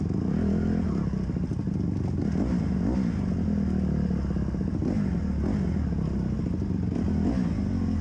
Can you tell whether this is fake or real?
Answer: real